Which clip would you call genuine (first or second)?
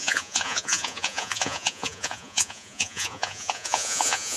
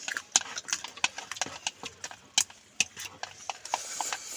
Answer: second